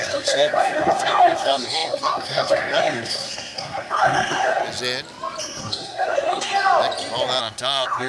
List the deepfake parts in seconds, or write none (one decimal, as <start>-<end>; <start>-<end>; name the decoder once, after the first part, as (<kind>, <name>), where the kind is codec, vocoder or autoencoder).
0.0-4.6 (codec, SNAC); 5.4-6.5; 7.4-8.1